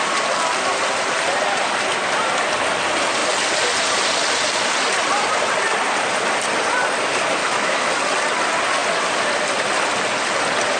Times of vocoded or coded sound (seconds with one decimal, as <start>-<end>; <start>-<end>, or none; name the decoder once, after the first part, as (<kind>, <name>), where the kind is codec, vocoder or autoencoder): 7.4-7.9 (autoencoder, DAC-VAE)